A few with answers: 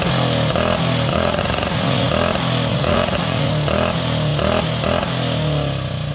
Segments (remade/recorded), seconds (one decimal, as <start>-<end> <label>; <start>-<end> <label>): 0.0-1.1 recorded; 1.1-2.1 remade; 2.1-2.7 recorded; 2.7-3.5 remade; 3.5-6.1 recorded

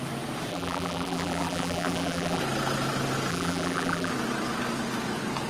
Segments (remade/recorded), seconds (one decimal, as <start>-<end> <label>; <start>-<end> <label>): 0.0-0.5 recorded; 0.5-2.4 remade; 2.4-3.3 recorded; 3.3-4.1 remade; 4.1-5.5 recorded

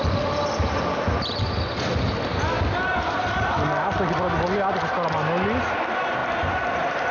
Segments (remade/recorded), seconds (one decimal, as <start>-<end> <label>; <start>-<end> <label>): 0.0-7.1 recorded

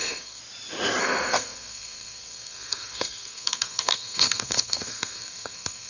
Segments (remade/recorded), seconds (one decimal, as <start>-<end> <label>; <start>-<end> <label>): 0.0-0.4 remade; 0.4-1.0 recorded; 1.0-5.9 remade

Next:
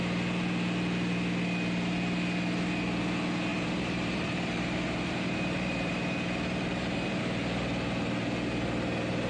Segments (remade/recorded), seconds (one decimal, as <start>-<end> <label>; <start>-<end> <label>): 0.0-3.5 recorded; 3.5-7.2 remade; 7.2-9.3 recorded

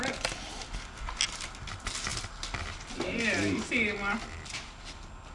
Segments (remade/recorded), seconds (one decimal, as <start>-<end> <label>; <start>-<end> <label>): 0.0-5.3 recorded